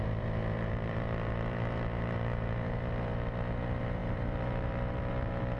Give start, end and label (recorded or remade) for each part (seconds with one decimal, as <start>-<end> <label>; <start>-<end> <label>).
0.0-5.6 remade